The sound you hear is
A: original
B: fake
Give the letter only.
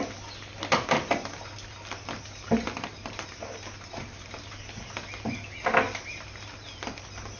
A